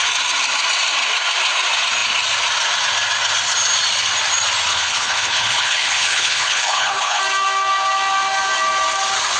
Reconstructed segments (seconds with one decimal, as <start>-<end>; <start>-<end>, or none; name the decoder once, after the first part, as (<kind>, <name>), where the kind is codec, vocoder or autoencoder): 4.7-7.2 (codec, HILCodec)